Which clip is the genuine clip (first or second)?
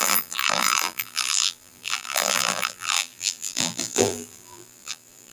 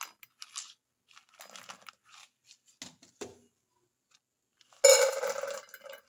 second